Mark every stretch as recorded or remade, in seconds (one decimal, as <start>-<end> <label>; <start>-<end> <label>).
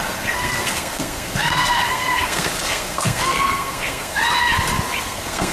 0.0-4.2 remade; 4.2-5.0 recorded; 5.0-5.5 remade